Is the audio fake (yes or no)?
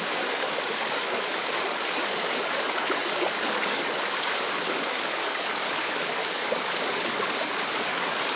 yes